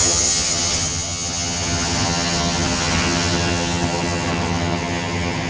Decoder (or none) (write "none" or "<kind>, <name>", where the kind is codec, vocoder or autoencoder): vocoder, HiFi-GAN